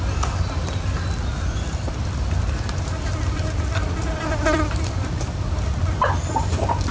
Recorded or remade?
recorded